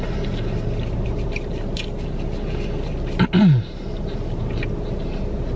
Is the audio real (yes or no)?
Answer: yes